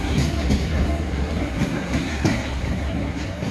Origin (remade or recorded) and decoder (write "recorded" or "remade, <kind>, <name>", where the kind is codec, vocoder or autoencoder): remade, codec, SNAC